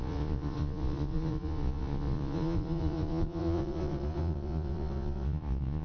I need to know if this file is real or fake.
fake